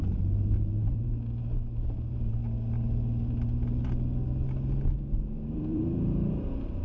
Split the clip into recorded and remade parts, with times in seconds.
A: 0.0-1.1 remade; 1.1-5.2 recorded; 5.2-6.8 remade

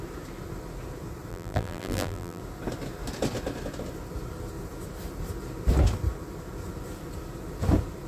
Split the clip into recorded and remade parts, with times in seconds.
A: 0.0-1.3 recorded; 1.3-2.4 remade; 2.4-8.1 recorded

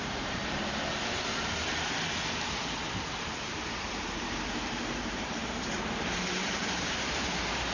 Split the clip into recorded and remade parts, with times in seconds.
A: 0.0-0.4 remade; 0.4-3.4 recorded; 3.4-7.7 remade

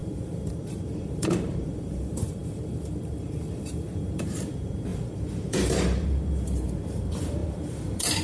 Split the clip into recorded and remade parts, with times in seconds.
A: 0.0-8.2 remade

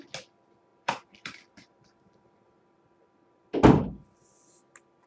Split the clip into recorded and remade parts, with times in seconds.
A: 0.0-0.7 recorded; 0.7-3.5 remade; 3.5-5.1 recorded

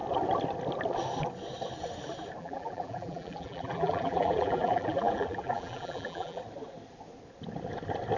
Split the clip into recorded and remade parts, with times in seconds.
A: 0.0-2.4 recorded; 2.4-6.4 remade; 6.4-8.2 recorded

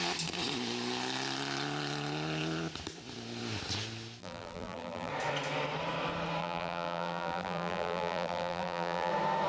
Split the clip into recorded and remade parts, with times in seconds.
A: 0.0-4.2 recorded; 4.2-5.1 remade; 5.1-6.4 recorded; 6.4-9.1 remade; 9.1-9.5 recorded